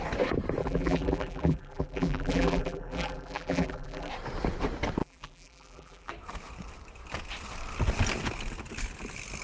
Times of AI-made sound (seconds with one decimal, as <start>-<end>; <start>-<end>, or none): 0.6-4.1; 5.0-6.1